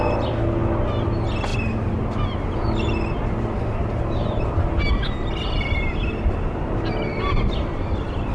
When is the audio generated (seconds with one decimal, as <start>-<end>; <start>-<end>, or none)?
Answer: none